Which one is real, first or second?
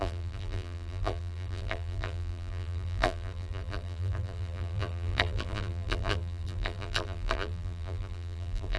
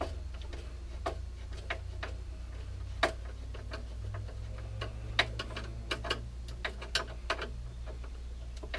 second